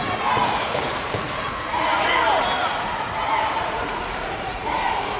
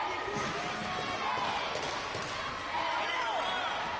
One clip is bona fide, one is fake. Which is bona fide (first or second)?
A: second